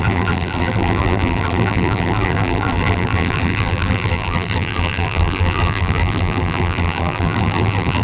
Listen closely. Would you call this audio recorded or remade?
remade